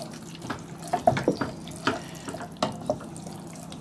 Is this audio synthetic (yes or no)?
no